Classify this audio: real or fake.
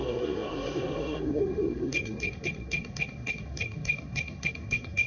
fake